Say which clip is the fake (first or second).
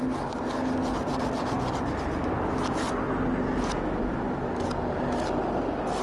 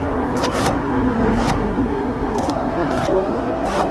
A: second